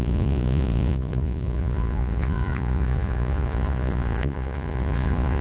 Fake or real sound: fake